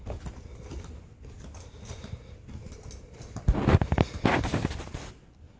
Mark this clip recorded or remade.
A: recorded